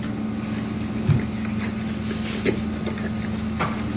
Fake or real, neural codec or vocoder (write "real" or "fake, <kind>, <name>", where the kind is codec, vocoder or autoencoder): real